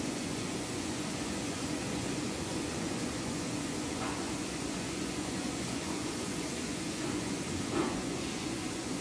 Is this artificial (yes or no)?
yes